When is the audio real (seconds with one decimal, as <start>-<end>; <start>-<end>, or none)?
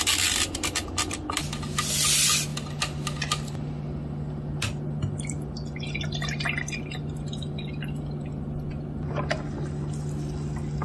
0.0-10.8